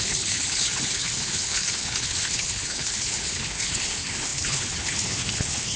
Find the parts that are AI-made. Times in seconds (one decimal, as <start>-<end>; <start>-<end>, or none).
0.0-5.8